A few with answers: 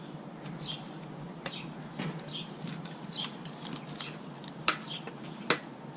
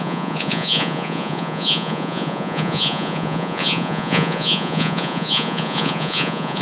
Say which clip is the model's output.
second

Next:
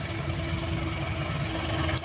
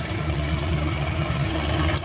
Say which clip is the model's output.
second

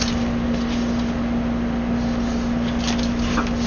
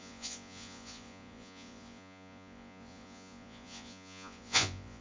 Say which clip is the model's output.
second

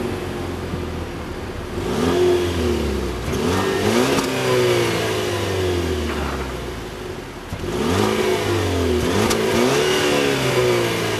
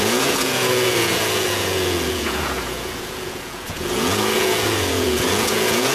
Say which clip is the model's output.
second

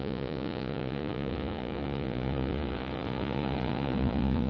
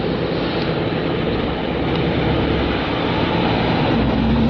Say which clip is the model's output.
first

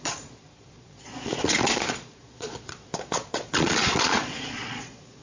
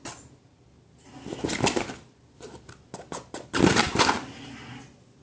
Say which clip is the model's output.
first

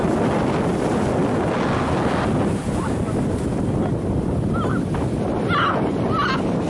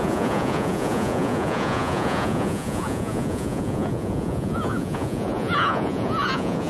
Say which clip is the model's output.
second